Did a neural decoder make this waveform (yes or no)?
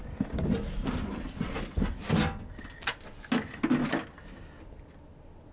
no